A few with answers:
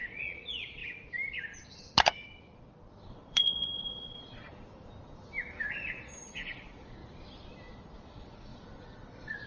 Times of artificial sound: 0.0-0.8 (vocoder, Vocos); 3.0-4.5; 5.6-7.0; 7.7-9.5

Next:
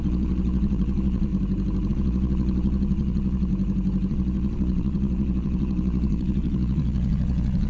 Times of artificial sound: 0.0-1.3 (vocoder, Vocos); 1.9-3.5; 4.1-7.7

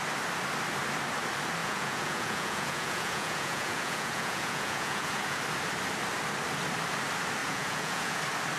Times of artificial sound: 1.6-5.4 (vocoder, Vocos); 7.4-8.2

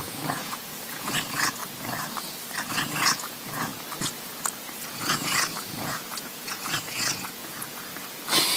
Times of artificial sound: 0.0-1.6 (vocoder, Vocos); 2.7-3.7; 4.2-7.9

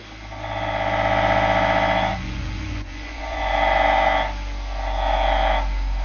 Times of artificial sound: 2.1-3.5 (vocoder, Vocos)

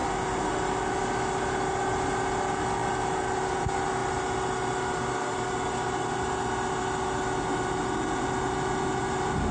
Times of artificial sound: none

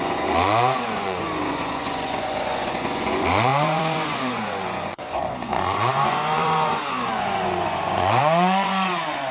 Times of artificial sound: 0.0-9.3 (vocoder, Vocos)